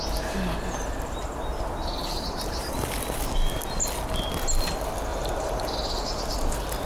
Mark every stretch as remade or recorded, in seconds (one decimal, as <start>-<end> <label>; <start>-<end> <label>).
0.0-1.5 recorded; 1.5-2.7 remade; 2.7-5.1 recorded; 5.1-6.2 remade; 6.2-6.9 recorded